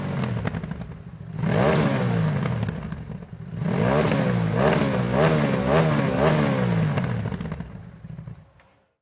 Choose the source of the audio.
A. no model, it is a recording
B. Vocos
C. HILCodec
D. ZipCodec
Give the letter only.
A